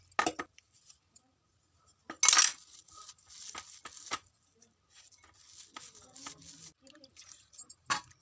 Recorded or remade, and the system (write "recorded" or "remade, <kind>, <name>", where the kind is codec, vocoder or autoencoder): recorded